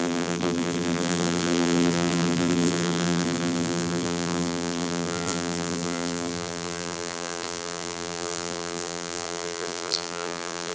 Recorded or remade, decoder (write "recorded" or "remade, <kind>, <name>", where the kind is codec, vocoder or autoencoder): remade, vocoder, BigVGAN v2